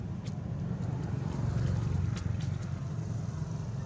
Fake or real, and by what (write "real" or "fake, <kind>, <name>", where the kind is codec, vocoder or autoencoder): real